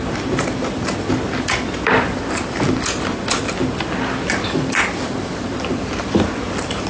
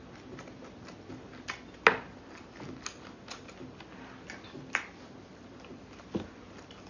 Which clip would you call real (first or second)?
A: second